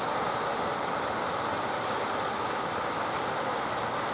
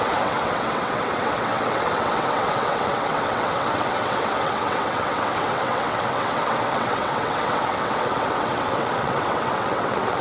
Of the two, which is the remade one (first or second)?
second